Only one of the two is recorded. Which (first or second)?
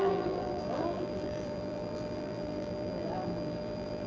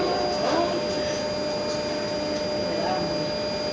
second